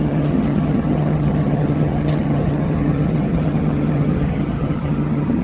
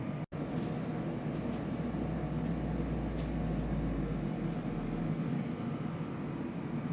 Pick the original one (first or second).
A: second